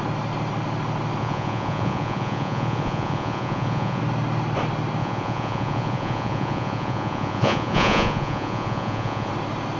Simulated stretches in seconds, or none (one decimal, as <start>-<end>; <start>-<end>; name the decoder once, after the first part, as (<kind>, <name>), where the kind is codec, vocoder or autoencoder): 1.2-4.0 (vocoder, Vocos); 5.0-9.3